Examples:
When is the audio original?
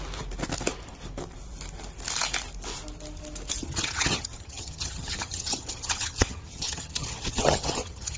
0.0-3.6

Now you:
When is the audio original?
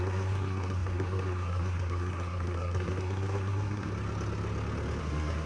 3.9-5.0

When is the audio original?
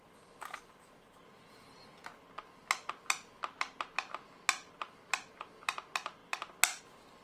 0.0-7.2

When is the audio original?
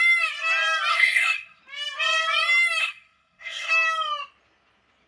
0.0-0.9; 1.6-2.8; 3.7-5.1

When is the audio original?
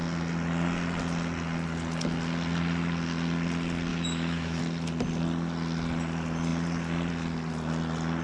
0.0-3.9; 4.6-8.2